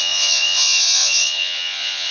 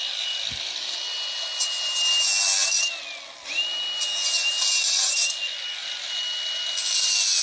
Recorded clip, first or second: second